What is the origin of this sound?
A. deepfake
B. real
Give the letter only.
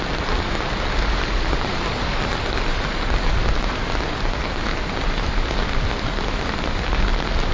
A